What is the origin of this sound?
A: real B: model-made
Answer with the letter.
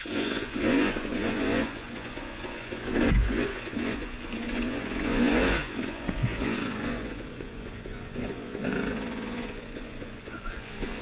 B